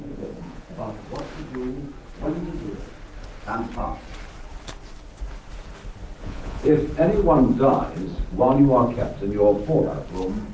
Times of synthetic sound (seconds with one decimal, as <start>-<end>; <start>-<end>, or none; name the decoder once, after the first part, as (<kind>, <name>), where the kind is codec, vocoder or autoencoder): 0.0-0.7 (vocoder, Vocos); 6.2-6.7